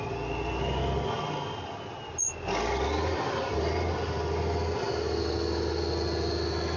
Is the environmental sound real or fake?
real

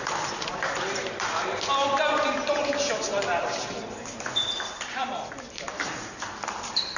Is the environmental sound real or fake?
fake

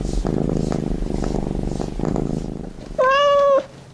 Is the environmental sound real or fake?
real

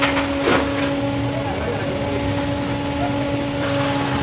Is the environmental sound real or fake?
real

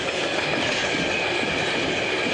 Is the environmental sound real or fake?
real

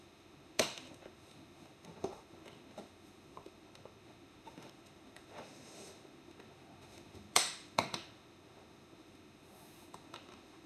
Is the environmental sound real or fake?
fake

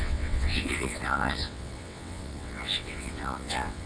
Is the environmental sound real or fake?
fake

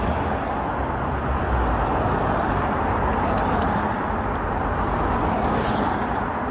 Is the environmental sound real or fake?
real